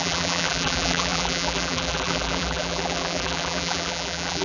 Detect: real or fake fake